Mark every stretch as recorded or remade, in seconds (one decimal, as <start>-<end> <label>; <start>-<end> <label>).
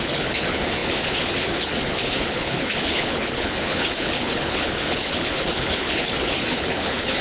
0.0-7.2 remade